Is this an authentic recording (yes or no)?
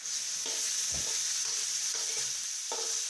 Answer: yes